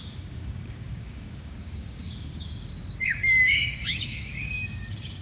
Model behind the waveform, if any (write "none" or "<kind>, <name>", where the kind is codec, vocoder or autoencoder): codec, DAC